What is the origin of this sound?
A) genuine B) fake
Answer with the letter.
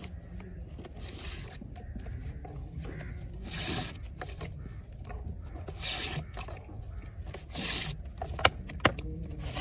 A